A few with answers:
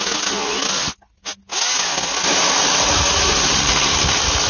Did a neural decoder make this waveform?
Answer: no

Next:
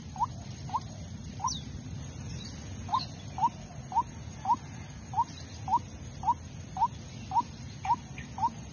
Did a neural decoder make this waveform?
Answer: no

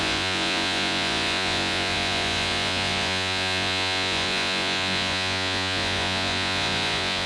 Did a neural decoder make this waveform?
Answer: yes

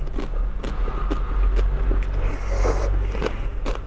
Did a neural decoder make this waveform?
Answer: no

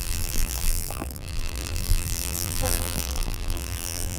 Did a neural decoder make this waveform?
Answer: yes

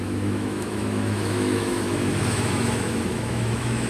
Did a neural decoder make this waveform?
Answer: yes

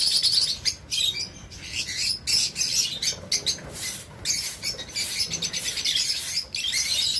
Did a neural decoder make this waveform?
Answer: no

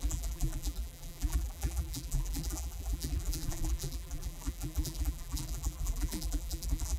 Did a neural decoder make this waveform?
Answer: yes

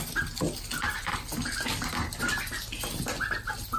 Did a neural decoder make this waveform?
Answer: no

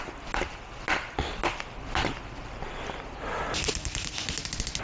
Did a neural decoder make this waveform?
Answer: no